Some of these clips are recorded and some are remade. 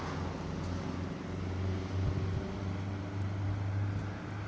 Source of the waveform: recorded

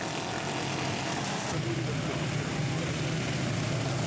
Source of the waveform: recorded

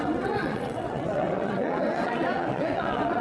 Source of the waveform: remade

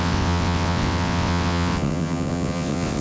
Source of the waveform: remade